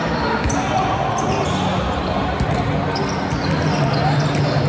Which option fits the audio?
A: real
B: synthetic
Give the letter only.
A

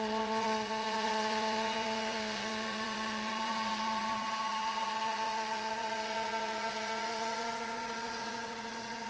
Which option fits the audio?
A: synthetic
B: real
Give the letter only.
A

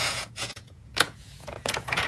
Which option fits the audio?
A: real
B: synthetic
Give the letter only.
B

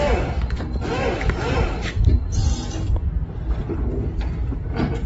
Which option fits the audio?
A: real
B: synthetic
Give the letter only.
A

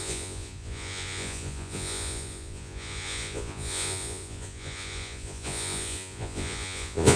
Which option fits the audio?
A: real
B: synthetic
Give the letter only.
B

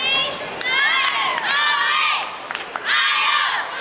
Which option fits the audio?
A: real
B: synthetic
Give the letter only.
A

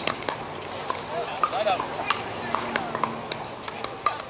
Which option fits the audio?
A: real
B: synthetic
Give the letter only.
A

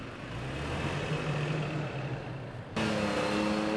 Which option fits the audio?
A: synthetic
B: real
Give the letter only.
B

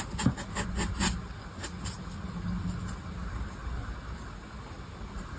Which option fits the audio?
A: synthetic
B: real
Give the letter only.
B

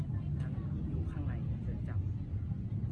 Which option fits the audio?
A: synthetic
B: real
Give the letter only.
B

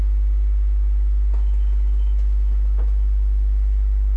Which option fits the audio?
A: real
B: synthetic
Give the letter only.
A